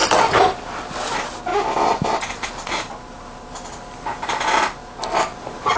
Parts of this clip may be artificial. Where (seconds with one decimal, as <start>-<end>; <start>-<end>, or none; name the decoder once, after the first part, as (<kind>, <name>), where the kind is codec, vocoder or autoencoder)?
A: none